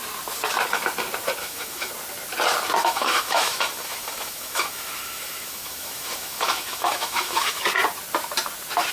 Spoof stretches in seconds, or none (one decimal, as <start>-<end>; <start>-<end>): 1.4-1.9; 2.8-7.6